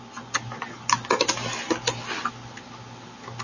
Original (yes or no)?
yes